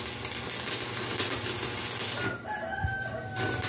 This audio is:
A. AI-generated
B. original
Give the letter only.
B